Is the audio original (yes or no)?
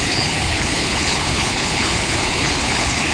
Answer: no